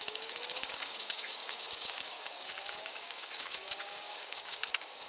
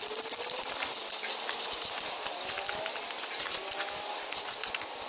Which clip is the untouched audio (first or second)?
second